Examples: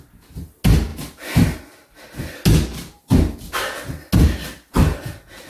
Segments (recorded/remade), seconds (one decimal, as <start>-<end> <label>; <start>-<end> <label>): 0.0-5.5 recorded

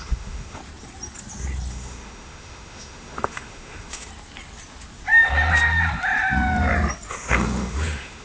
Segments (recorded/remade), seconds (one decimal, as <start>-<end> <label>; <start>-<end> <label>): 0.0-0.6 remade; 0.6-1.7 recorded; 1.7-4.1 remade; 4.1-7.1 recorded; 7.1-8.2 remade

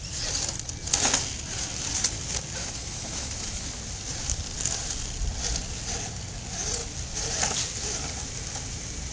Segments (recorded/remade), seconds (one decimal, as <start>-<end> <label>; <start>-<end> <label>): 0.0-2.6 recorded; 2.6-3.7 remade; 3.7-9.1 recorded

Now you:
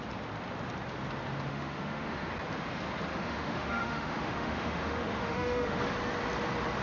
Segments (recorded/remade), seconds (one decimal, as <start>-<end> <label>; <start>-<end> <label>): 0.0-1.5 recorded; 1.5-2.3 remade; 2.3-3.1 recorded; 3.1-5.8 remade; 5.8-6.8 recorded

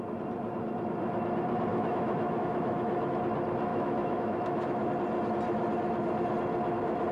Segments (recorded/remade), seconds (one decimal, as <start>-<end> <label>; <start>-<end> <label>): 0.0-1.7 recorded; 1.7-3.2 remade; 3.2-3.7 recorded; 3.7-4.9 remade; 4.9-7.1 recorded

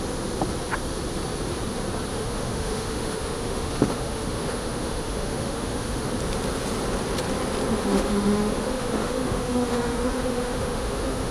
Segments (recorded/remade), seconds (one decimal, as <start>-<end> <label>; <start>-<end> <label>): 0.0-2.1 recorded; 2.1-6.1 remade; 6.1-7.8 recorded; 7.8-11.3 remade